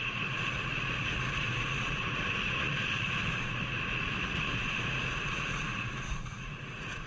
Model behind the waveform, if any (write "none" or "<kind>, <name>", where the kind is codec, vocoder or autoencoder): vocoder, Vocos